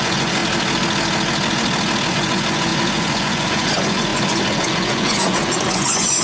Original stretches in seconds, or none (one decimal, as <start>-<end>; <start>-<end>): 0.4-2.1